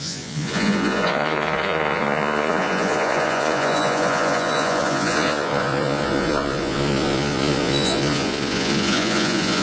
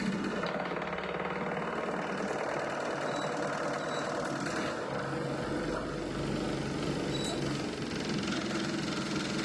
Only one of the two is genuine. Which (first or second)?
second